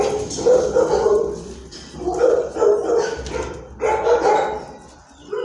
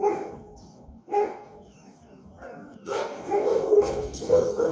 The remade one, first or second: second